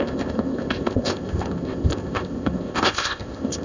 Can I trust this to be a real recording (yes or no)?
no